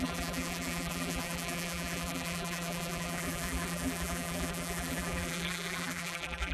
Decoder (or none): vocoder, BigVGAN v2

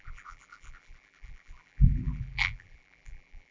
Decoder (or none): vocoder, BigVGAN v2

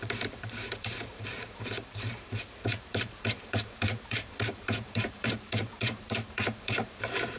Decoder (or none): vocoder, BigVGAN v2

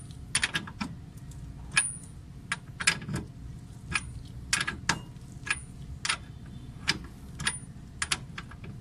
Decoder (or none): none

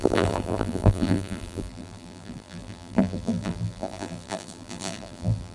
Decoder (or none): vocoder, BigVGAN v2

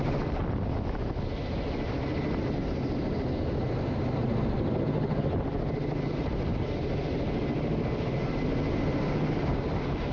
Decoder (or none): none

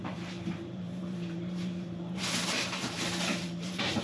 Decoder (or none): vocoder, BigVGAN v2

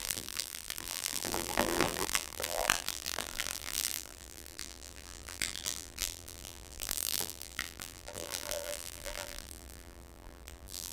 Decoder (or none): vocoder, BigVGAN v2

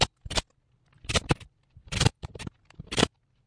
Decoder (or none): vocoder, BigVGAN v2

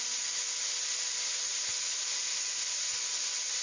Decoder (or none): none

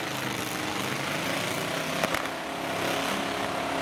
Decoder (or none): none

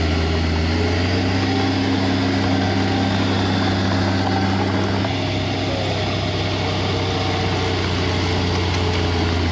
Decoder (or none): none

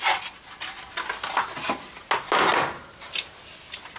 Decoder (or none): none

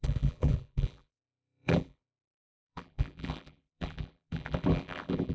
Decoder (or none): vocoder, BigVGAN v2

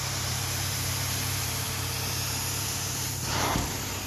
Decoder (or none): vocoder, BigVGAN v2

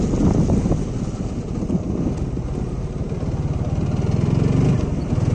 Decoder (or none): none